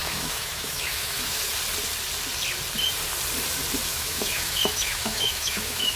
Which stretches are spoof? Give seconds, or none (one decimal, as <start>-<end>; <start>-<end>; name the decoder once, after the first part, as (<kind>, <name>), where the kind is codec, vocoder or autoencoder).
0.0-1.5 (autoencoder, DAC-VAE); 3.9-6.0